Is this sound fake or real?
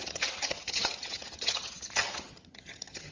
fake